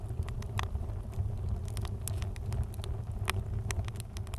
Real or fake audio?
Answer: real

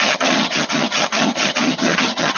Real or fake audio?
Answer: fake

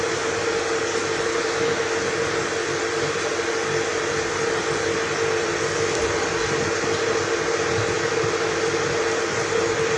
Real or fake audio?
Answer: real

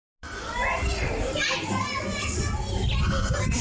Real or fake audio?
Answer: real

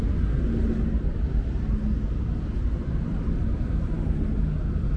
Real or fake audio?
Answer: real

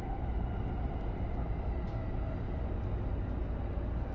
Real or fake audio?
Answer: real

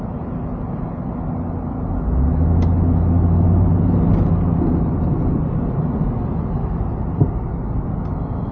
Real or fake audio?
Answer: real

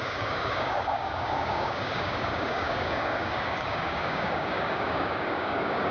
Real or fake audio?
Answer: fake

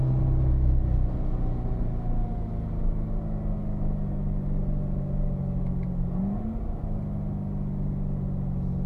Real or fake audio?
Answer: real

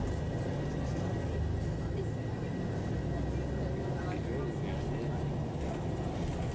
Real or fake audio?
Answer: real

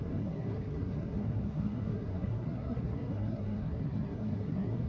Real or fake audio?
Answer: fake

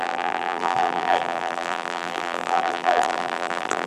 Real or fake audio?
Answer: fake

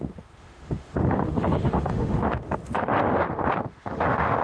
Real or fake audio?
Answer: fake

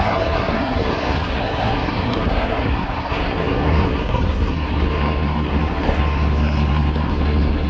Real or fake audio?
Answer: fake